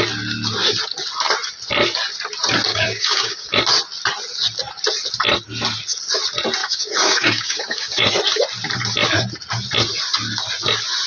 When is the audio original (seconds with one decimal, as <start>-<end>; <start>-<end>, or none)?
0.0-2.7; 3.6-6.6; 8.1-11.1

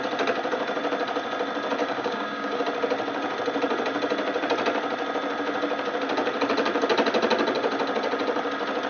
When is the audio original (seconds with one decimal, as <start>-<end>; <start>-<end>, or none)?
0.0-1.8; 2.6-8.9

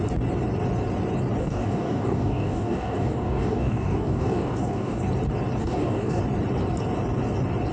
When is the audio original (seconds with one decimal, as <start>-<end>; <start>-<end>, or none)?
0.0-1.4; 5.0-5.6; 6.2-7.7

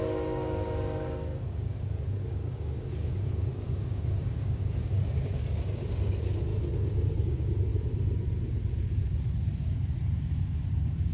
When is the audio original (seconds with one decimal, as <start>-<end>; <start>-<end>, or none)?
6.5-7.2; 7.7-10.7

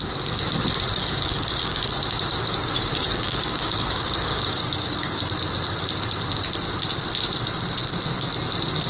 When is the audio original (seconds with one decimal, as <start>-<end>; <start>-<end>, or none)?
0.0-1.0; 5.2-8.9